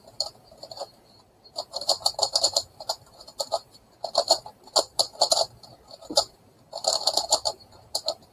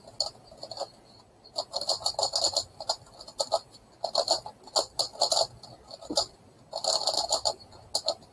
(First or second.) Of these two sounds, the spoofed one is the first